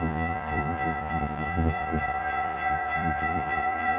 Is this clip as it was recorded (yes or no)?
no